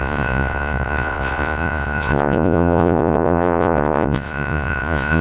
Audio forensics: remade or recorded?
remade